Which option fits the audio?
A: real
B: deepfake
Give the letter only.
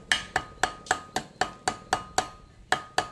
A